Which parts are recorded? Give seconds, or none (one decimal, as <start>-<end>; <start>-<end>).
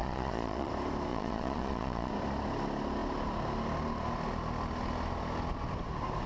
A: 0.7-1.1; 2.1-6.3